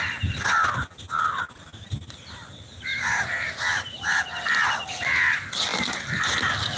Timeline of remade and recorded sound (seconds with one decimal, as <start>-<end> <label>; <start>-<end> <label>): 0.0-2.9 recorded; 2.9-4.2 remade; 4.2-6.8 recorded